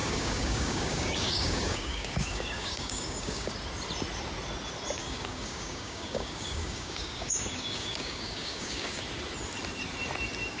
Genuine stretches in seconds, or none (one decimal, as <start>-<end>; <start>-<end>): 3.5-5.0; 9.0-10.6